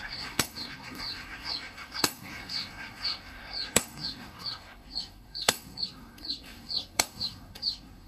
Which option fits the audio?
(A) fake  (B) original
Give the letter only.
A